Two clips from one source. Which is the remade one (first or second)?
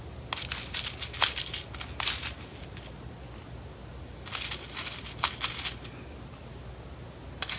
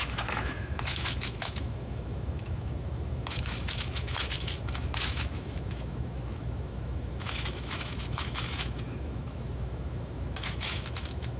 second